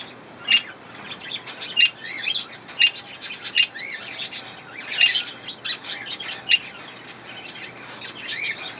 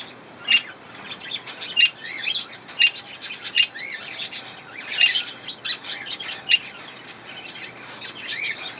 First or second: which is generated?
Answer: second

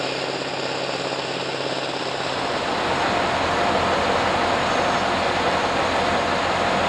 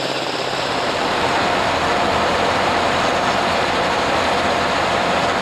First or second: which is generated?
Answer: second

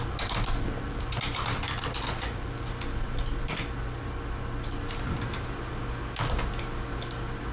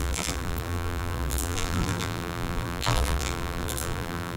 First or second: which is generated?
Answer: second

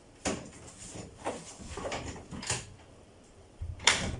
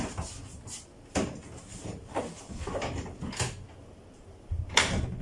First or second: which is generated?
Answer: first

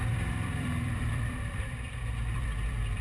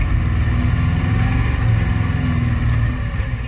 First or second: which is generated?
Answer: first